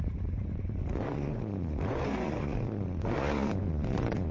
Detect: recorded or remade remade